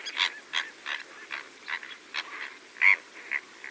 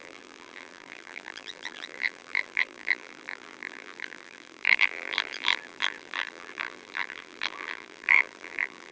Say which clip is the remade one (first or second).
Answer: second